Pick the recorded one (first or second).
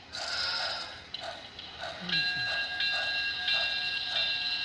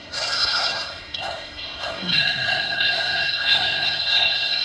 first